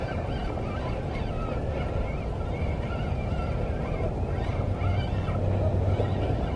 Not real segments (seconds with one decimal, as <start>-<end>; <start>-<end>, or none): none